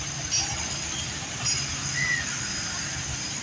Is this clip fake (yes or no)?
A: no